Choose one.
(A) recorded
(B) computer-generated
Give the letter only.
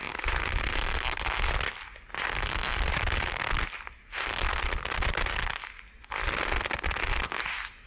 A